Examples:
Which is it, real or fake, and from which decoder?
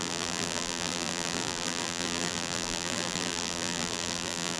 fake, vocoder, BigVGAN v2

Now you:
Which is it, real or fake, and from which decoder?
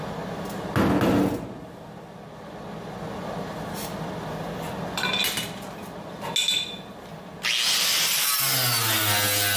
real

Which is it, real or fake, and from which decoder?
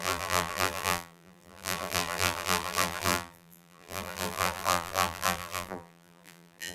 fake, vocoder, BigVGAN v2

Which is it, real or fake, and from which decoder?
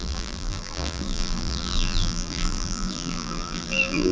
fake, vocoder, BigVGAN v2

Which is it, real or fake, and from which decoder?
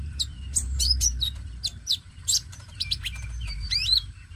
fake, vocoder, BigVGAN v2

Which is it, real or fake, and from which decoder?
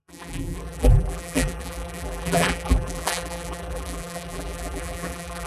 fake, vocoder, BigVGAN v2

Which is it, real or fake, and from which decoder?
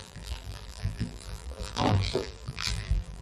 fake, vocoder, BigVGAN v2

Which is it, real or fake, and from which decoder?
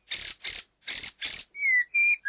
real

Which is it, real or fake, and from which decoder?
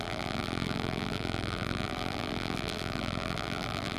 fake, vocoder, BigVGAN v2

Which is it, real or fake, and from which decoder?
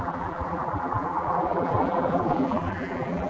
fake, vocoder, BigVGAN v2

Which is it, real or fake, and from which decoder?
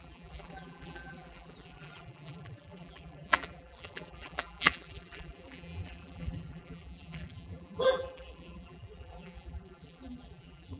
fake, vocoder, BigVGAN v2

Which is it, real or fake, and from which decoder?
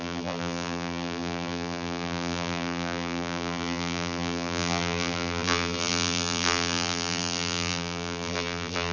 fake, vocoder, BigVGAN v2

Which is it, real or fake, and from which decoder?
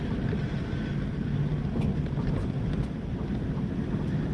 real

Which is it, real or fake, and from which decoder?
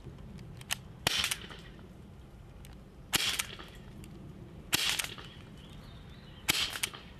real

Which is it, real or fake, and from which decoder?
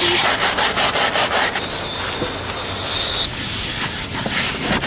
real